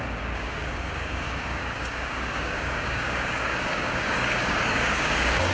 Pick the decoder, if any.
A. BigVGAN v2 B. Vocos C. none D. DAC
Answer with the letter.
D